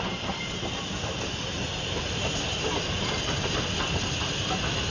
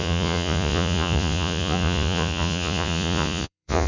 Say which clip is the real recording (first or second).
first